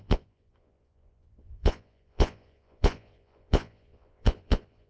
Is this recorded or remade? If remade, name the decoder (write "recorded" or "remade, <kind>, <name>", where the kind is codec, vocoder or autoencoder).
remade, vocoder, Vocos